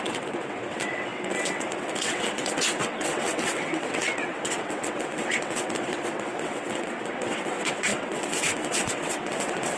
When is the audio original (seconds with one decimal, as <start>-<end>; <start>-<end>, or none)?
none